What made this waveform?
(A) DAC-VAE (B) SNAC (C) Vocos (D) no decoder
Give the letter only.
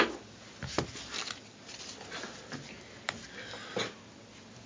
D